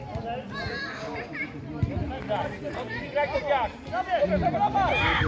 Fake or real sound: real